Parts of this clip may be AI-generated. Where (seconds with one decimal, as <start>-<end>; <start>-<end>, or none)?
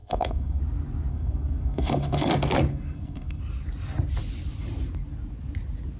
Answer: 0.0-0.6; 1.1-2.3; 2.7-3.4